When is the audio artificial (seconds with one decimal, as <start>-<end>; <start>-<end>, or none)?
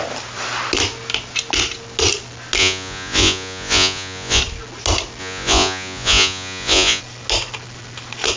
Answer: 2.6-4.4; 5.2-7.0